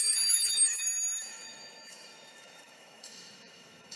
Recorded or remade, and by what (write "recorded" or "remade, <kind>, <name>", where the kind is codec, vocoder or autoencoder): remade, autoencoder, DAC-VAE